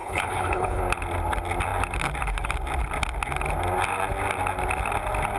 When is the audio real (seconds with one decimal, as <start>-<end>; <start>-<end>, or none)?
0.8-5.4